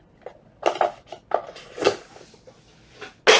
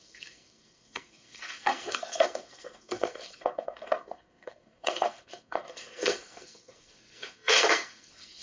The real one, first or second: first